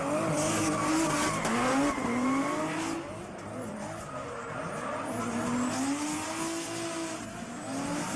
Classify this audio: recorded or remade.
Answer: recorded